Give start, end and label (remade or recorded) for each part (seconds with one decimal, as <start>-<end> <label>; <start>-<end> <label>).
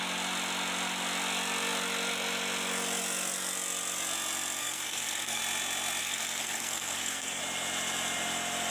0.0-4.6 recorded; 4.6-5.4 remade; 5.4-6.0 recorded; 6.0-7.4 remade; 7.4-8.7 recorded